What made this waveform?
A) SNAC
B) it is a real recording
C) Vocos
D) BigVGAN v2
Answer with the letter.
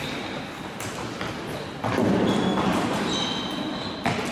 B